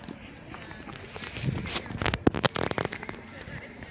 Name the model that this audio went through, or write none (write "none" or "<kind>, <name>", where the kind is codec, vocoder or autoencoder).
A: none